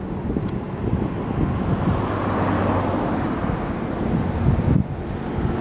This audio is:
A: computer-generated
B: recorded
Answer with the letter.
B